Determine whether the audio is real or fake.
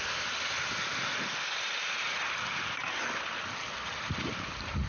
real